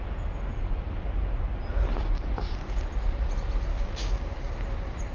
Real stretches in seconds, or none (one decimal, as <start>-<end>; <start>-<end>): 0.0-3.7; 4.5-5.1